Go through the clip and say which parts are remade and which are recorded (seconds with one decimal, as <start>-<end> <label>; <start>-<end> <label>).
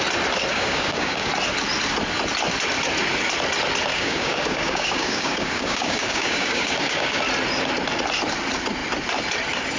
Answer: 0.0-0.5 recorded; 0.5-1.3 remade; 1.3-3.9 recorded; 3.9-7.2 remade; 7.2-9.8 recorded